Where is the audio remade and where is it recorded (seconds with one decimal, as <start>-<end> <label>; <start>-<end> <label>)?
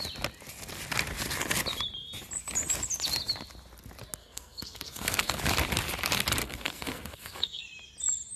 0.0-4.2 recorded; 4.2-5.4 remade; 5.4-6.4 recorded; 6.4-7.6 remade; 7.6-8.4 recorded